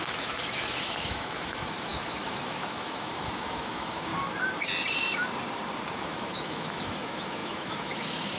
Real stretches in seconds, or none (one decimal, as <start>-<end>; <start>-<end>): 4.1-6.0